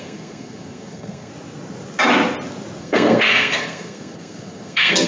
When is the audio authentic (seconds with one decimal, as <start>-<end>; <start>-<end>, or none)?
1.3-2.8